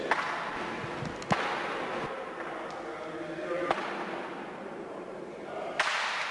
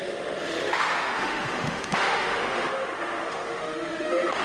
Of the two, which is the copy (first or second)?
second